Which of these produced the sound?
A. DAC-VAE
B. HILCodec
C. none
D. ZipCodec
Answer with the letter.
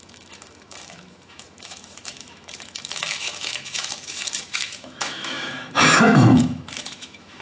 A